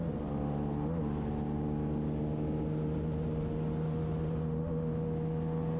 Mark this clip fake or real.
real